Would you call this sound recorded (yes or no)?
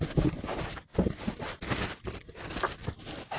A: yes